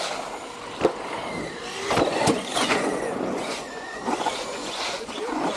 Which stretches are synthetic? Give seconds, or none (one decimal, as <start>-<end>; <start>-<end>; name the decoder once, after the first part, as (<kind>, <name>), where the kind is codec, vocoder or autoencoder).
2.1-5.6 (vocoder, Vocos)